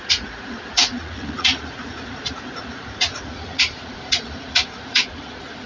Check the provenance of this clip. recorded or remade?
remade